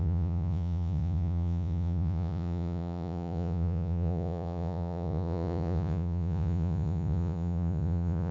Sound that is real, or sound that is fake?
fake